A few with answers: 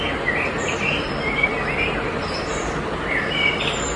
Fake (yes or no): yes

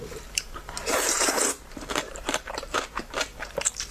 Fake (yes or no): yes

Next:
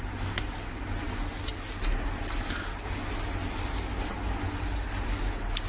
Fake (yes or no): no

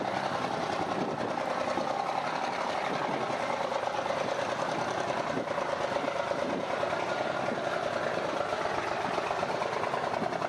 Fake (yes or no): yes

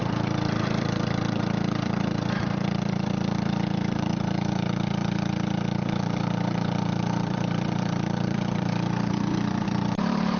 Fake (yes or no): yes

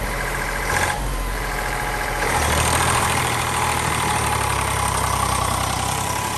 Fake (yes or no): yes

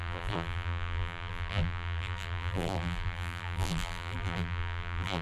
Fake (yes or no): yes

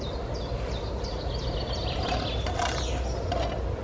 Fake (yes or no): no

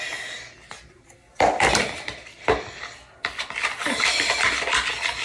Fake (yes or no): no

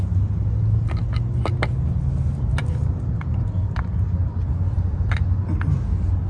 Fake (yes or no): no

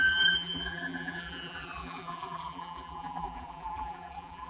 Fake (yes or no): yes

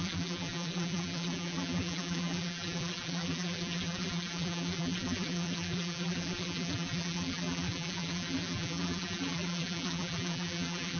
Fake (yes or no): yes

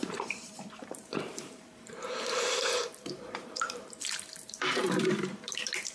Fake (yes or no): yes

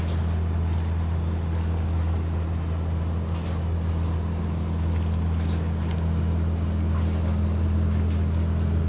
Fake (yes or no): no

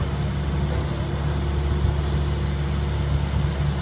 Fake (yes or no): no